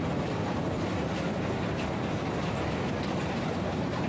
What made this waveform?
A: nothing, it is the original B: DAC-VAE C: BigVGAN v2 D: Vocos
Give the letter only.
A